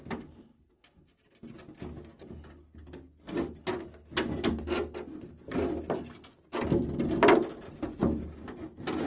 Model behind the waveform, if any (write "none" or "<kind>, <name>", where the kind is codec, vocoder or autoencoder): none